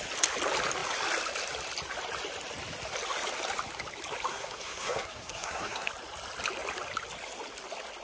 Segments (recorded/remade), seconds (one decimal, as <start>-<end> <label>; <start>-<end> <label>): 0.0-4.3 recorded; 4.3-5.9 remade; 5.9-8.0 recorded